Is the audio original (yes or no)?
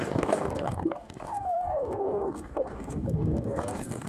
no